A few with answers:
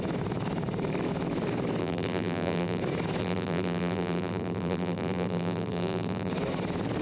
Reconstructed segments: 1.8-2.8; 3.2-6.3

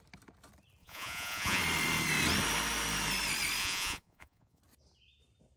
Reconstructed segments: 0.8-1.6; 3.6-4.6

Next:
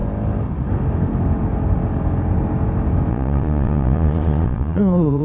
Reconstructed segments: 3.1-5.2